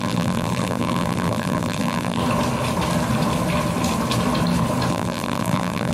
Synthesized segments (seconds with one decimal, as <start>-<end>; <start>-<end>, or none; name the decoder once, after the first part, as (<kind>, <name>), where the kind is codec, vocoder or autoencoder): 0.0-2.2 (vocoder, BigVGAN v2); 4.9-5.9